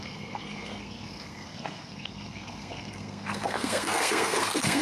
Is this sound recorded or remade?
remade